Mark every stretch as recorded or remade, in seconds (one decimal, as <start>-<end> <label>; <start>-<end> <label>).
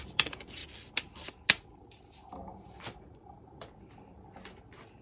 0.0-0.6 remade; 0.6-2.3 recorded; 2.3-3.5 remade; 3.5-5.0 recorded